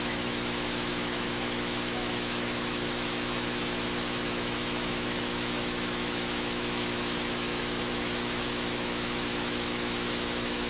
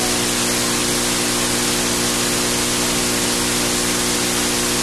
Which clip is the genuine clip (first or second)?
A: second